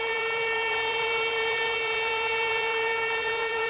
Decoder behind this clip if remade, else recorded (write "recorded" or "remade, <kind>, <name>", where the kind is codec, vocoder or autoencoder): remade, vocoder, BigVGAN v2